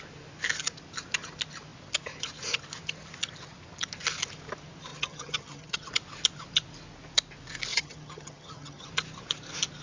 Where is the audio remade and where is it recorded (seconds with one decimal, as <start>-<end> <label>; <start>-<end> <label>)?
0.0-4.9 recorded; 4.9-5.9 remade; 5.9-7.7 recorded; 7.7-8.9 remade; 8.9-9.8 recorded

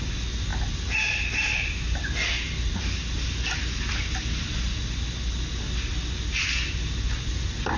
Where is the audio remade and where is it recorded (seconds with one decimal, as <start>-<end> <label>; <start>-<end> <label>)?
0.0-7.8 recorded

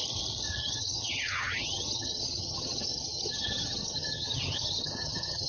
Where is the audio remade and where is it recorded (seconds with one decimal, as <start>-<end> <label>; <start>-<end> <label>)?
0.0-0.6 recorded; 0.6-5.5 remade

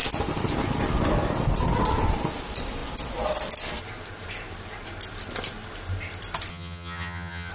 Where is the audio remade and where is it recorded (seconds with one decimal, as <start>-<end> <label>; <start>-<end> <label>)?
0.0-6.5 recorded; 6.5-7.5 remade

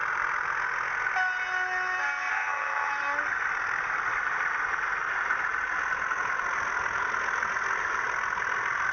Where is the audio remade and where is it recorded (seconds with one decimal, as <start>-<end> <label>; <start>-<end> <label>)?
0.0-2.3 recorded; 2.3-2.9 remade; 2.9-8.9 recorded

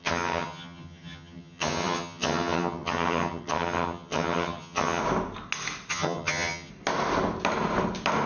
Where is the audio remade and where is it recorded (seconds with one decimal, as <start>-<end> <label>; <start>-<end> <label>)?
0.0-5.0 remade; 5.0-5.9 recorded; 5.9-6.7 remade; 6.7-8.3 recorded

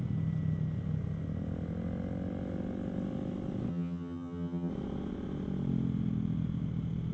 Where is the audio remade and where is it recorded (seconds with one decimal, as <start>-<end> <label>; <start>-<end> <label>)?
0.0-3.7 recorded; 3.7-4.7 remade; 4.7-7.1 recorded

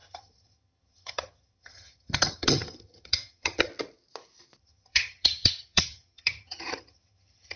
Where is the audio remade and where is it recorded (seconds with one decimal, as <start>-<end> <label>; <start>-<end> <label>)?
0.0-3.7 remade; 3.7-4.6 recorded; 4.6-7.6 remade